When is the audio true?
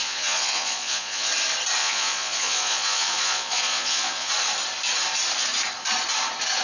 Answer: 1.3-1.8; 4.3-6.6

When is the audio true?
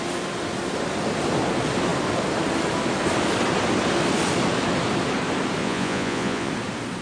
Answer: 0.0-5.6; 6.5-7.0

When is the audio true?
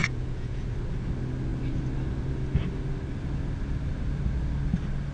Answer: 0.6-5.1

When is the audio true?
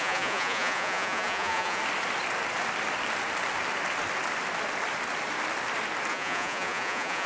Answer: 1.8-6.1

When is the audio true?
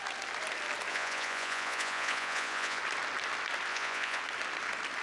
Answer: 0.0-0.9; 2.8-3.7; 4.2-5.0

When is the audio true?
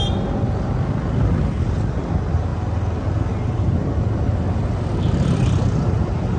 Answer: 0.0-6.4